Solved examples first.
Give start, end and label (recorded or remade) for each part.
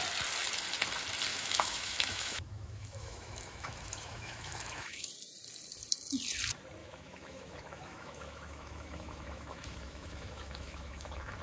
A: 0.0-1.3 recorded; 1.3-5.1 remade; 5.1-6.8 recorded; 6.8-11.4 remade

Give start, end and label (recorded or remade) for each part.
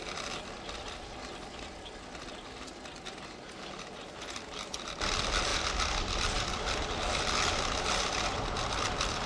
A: 0.0-9.3 recorded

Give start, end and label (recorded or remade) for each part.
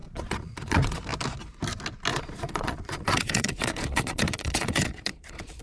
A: 0.0-1.0 remade; 1.0-2.1 recorded; 2.1-5.6 remade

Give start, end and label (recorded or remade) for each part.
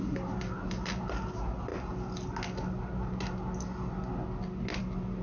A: 0.0-5.2 recorded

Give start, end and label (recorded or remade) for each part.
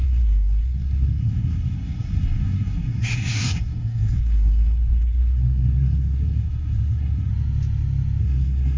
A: 0.0-7.3 remade; 7.3-8.2 recorded; 8.2-8.8 remade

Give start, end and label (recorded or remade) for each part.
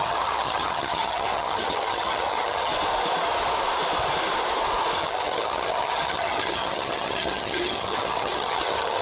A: 0.0-2.7 remade; 2.7-5.0 recorded; 5.0-9.0 remade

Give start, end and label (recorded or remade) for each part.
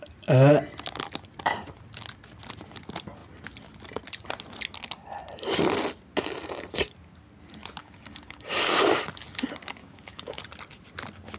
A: 0.0-7.8 recorded; 7.8-9.0 remade; 9.0-9.8 recorded; 9.8-10.4 remade; 10.4-11.4 recorded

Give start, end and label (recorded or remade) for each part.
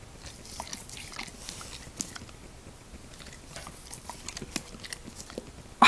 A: 0.0-5.9 recorded